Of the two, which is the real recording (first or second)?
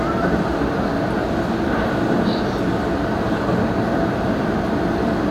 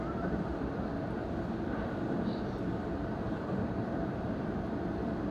first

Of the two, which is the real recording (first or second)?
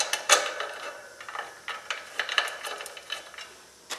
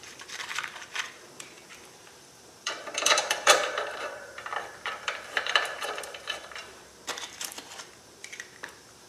first